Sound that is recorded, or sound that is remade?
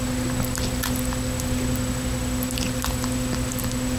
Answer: recorded